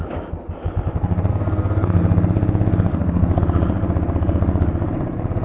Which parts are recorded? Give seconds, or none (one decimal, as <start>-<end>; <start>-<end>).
0.0-1.3; 2.0-2.9; 3.4-5.4